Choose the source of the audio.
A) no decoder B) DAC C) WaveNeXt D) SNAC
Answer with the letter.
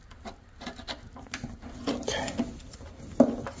A